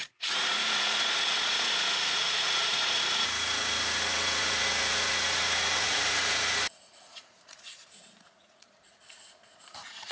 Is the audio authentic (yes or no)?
no